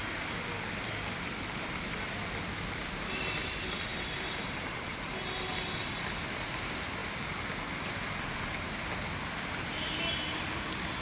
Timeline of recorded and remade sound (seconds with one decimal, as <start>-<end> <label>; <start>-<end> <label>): 0.0-3.9 recorded; 3.9-5.4 remade; 5.4-11.0 recorded